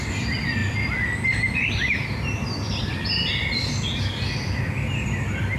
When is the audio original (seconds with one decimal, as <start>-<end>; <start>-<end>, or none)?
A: 0.0-0.6; 4.0-5.6